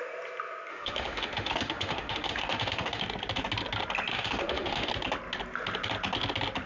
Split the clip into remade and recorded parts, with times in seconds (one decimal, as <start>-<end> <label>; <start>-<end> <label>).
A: 0.0-0.7 recorded; 0.7-3.0 remade; 3.0-4.1 recorded; 4.1-4.9 remade; 4.9-6.7 recorded